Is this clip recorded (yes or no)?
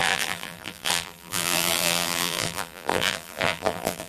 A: no